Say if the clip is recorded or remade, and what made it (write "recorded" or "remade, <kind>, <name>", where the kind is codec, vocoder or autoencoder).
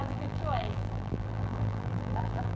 remade, vocoder, BigVGAN v2